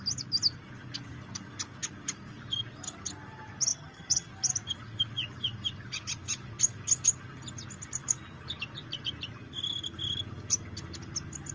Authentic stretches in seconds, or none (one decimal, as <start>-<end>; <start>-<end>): 0.0-3.7; 4.3-11.5

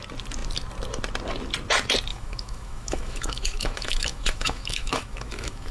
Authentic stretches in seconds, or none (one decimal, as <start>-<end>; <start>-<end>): 0.0-2.1

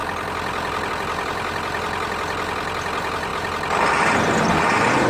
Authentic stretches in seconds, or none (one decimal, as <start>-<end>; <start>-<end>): 0.0-5.1

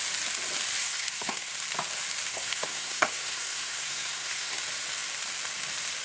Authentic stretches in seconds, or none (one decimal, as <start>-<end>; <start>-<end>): 0.0-0.8; 1.5-2.3; 4.6-6.0

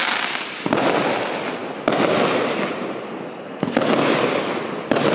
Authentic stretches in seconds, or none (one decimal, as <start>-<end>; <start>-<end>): 0.0-5.1

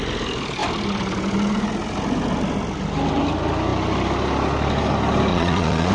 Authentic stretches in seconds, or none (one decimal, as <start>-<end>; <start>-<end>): 0.0-5.3

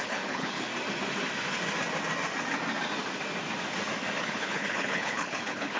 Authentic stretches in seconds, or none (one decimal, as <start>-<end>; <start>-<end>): 0.7-4.2